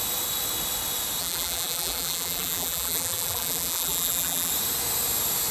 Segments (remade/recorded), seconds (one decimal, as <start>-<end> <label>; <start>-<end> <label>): 0.0-1.2 recorded; 1.2-4.5 remade; 4.5-5.5 recorded